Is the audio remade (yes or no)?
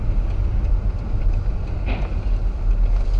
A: no